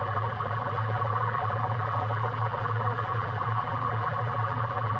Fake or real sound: fake